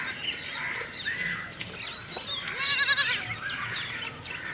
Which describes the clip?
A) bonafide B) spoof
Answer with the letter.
A